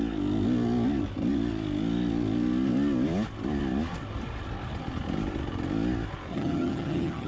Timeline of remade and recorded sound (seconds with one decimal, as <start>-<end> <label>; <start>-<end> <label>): 0.0-6.3 recorded; 6.3-7.3 remade